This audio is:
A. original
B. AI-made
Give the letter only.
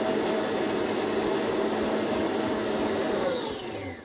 A